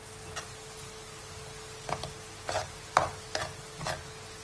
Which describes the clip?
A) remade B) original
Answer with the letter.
B